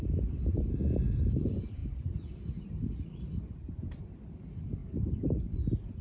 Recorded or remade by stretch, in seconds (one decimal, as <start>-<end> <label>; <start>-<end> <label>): 0.0-0.7 recorded; 0.7-1.3 remade; 1.3-6.0 recorded